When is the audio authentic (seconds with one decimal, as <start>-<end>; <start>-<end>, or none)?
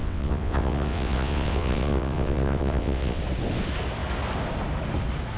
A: 3.2-5.4